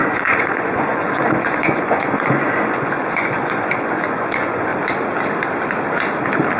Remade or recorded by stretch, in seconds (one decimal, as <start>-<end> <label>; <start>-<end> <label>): 0.0-4.7 remade; 4.7-6.6 recorded